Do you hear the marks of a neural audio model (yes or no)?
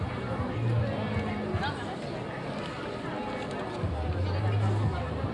no